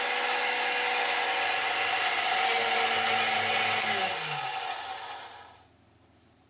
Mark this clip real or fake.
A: real